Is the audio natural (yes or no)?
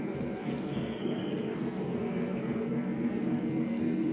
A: no